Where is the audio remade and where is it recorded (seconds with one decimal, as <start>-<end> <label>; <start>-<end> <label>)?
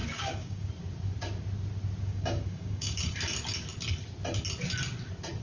0.0-0.7 remade; 0.7-2.1 recorded; 2.1-3.0 remade; 3.0-5.4 recorded